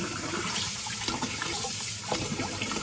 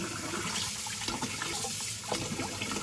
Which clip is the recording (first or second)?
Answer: second